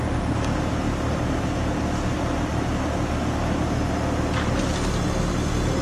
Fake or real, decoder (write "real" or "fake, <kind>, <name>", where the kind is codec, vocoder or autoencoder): real